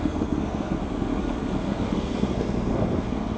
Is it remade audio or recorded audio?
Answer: remade